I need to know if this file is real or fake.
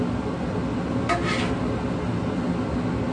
real